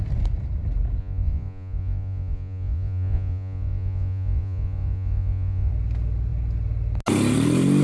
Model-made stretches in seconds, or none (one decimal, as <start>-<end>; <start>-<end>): 1.0-5.7